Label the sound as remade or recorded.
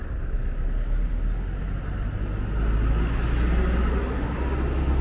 recorded